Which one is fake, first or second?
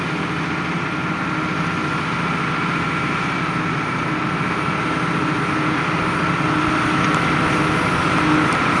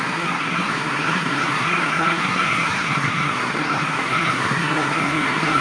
second